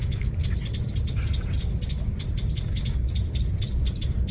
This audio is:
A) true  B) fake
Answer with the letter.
A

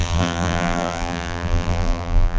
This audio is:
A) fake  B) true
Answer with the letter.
A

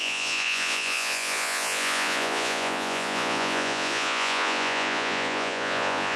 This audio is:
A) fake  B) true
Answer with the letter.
A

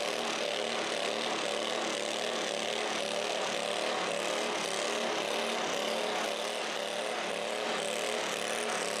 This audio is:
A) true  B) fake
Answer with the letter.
A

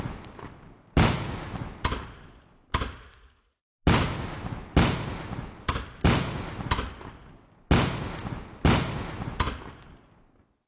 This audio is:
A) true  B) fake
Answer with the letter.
A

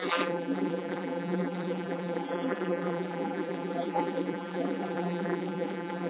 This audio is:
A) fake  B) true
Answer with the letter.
A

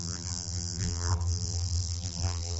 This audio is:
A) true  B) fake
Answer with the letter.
B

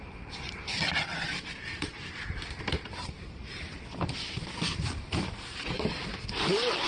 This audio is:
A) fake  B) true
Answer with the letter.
A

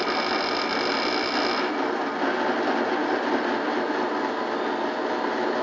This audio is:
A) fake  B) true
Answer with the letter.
B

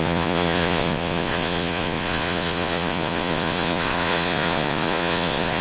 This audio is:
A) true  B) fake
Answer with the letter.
B